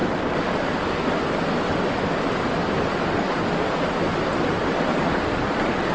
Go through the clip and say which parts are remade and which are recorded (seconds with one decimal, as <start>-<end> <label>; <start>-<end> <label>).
0.0-5.9 recorded